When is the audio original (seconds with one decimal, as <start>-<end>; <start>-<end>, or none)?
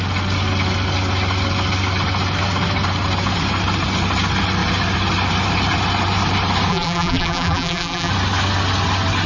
0.0-6.7; 8.1-9.3